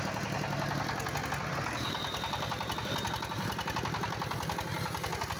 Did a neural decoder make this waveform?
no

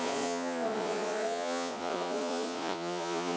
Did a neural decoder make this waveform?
yes